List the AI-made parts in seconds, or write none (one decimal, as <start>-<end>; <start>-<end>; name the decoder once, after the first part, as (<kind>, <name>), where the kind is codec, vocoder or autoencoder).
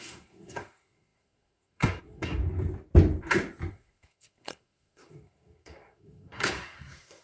0.0-2.4 (codec, SNAC); 3.7-7.2